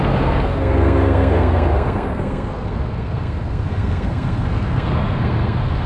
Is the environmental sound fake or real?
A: fake